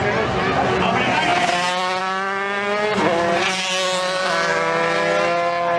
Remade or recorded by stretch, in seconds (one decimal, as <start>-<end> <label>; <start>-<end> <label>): 0.0-5.8 recorded